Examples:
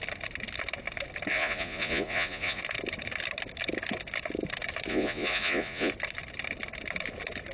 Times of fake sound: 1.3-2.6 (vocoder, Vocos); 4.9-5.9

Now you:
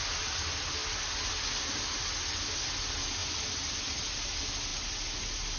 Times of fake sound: none

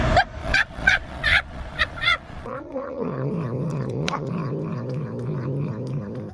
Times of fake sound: 0.4-3.3 (vocoder, Vocos); 3.7-4.3